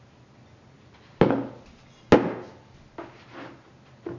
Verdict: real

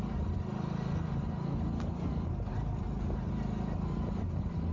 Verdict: real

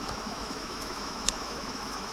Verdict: fake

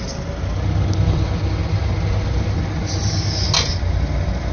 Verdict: real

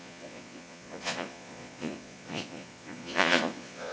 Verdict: fake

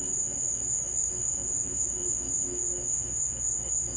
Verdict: fake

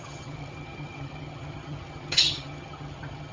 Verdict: fake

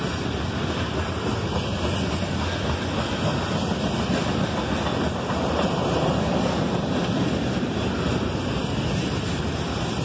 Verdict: real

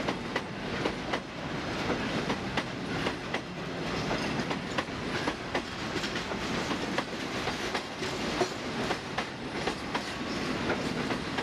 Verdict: real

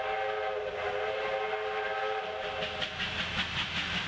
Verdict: real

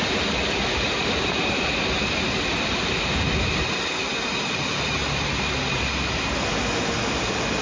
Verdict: real